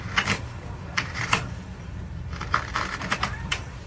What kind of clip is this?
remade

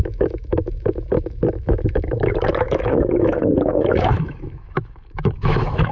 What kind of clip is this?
remade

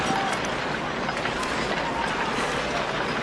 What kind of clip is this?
recorded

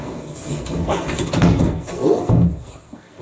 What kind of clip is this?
remade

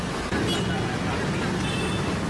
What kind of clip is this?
recorded